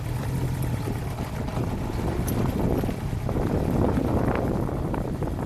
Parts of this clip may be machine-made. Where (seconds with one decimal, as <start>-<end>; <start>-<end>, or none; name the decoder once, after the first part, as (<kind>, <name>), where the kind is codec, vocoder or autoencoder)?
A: 0.0-1.5 (vocoder, BigVGAN v2); 2.4-5.5